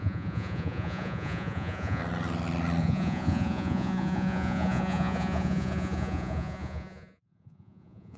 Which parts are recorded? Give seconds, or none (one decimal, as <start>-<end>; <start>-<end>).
2.0-2.8